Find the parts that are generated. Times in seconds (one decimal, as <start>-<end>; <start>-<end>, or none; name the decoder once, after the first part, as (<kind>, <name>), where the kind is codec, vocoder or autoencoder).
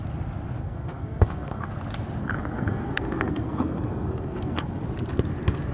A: 0.6-1.7 (codec, SNAC); 2.2-4.8